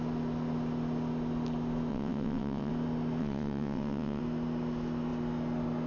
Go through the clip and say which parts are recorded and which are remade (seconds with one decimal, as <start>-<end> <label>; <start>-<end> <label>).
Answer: 0.0-1.9 recorded; 1.9-2.7 remade; 2.7-3.2 recorded; 3.2-4.2 remade; 4.2-5.9 recorded